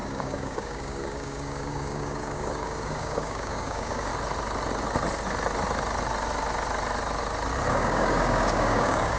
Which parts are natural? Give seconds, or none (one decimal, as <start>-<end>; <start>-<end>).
4.1-7.7